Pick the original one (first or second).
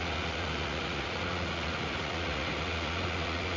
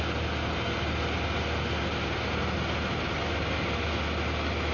second